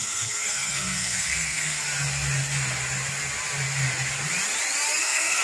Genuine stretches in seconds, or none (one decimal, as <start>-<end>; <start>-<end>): 1.8-5.0